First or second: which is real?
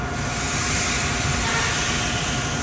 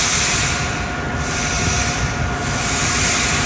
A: first